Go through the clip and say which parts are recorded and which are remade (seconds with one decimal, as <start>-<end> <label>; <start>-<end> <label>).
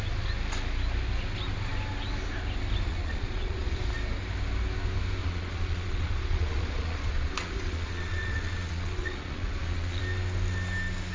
0.0-2.9 recorded; 2.9-3.8 remade; 3.8-5.2 recorded; 5.2-10.0 remade; 10.0-11.1 recorded